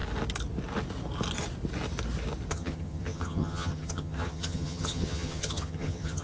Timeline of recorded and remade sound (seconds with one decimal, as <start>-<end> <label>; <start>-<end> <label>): 0.0-2.5 recorded; 2.5-6.2 remade

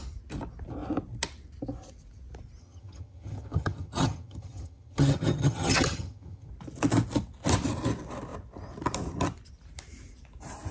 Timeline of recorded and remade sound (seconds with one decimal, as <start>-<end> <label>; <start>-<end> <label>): 0.0-2.6 recorded; 2.6-6.5 remade; 6.5-10.7 recorded

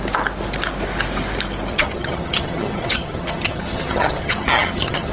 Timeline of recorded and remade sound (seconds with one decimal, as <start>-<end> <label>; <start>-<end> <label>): 0.0-1.7 recorded; 1.7-5.1 remade

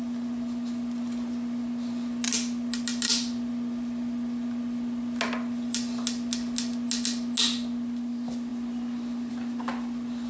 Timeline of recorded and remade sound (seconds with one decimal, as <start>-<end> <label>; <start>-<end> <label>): 0.0-10.3 recorded

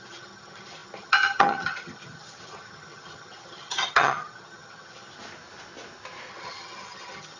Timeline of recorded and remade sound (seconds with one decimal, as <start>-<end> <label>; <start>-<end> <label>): 0.0-5.1 remade; 5.1-6.3 recorded; 6.3-7.4 remade

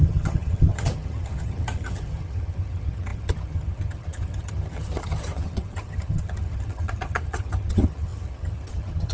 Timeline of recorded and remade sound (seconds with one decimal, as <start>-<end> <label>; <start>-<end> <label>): 0.0-9.1 remade

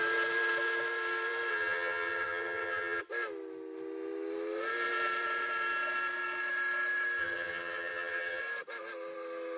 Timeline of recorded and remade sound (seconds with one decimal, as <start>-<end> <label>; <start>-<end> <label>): 0.0-1.5 recorded; 1.5-3.0 remade; 3.0-7.2 recorded; 7.2-8.4 remade; 8.4-9.6 recorded